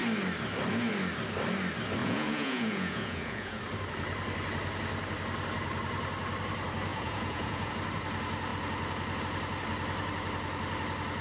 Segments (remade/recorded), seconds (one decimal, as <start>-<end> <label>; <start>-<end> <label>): 0.0-2.0 recorded; 2.0-3.6 remade; 3.6-6.9 recorded; 6.9-7.7 remade; 7.7-11.2 recorded

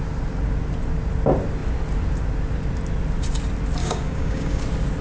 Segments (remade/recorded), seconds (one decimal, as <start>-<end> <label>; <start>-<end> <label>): 0.0-3.8 recorded; 3.8-4.6 remade; 4.6-5.0 recorded

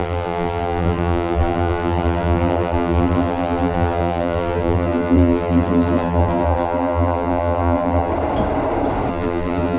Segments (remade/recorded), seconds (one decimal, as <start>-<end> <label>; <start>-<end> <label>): 0.0-8.1 remade; 8.1-9.1 recorded; 9.1-9.8 remade

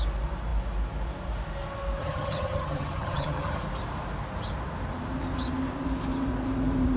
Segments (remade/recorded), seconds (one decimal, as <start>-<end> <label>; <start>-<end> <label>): 0.0-2.0 recorded; 2.0-3.6 remade; 3.6-7.0 recorded

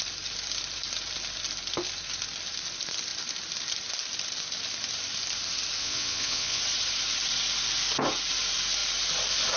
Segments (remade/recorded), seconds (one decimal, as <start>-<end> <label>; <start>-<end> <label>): 0.0-5.8 recorded; 5.8-6.6 remade; 6.6-9.6 recorded

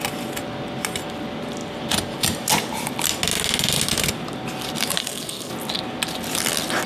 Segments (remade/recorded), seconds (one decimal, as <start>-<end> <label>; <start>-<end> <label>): 0.0-5.0 recorded; 5.0-5.5 remade; 5.5-6.9 recorded